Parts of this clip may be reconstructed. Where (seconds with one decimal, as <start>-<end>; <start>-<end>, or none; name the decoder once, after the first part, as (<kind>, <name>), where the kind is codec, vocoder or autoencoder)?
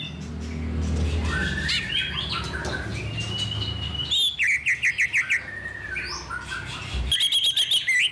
none